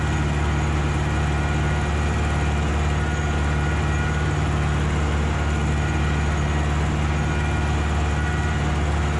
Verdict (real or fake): real